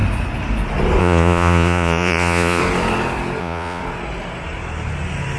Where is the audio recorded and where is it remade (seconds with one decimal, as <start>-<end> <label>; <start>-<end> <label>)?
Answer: 0.0-1.0 recorded; 1.0-2.6 remade; 2.6-3.4 recorded; 3.4-3.8 remade; 3.8-5.4 recorded